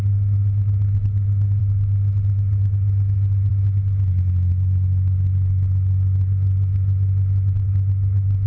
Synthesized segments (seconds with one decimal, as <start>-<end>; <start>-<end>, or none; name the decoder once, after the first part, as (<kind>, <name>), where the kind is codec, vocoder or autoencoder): none